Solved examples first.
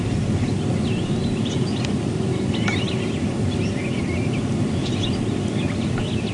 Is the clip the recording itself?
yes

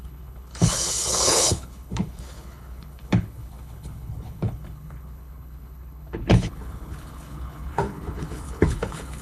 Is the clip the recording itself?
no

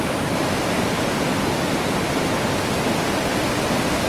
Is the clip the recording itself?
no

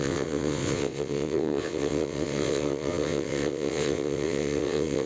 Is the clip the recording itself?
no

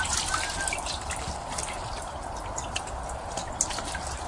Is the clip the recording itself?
yes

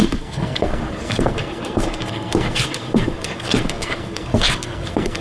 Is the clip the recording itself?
no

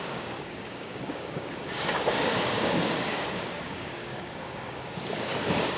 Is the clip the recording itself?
no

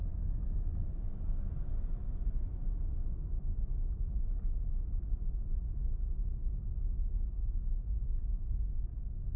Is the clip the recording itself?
yes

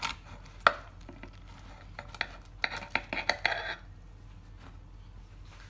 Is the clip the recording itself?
yes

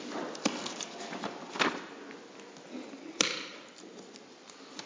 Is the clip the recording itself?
yes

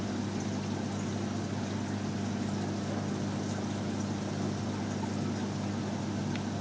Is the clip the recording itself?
yes